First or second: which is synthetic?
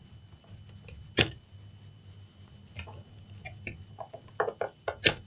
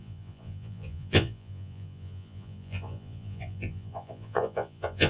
second